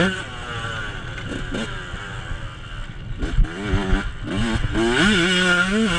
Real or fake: real